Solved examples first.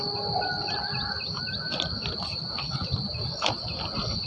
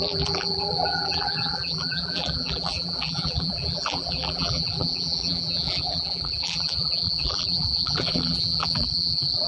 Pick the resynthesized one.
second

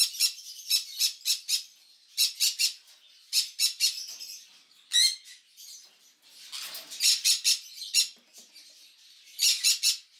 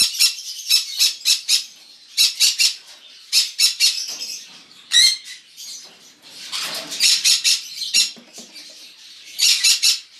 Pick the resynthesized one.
second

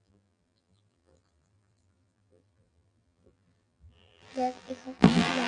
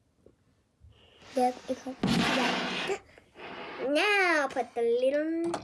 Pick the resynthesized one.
first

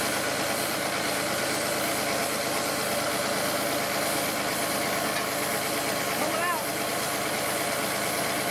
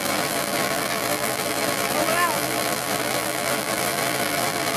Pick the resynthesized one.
second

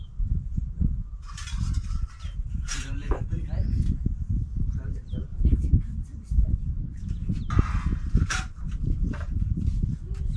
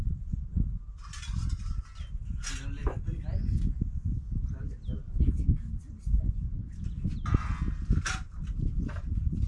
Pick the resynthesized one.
first